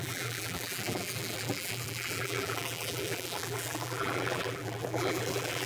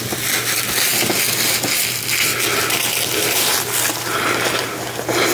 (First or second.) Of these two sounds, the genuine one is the second